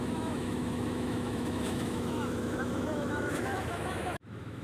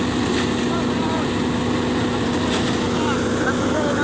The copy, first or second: first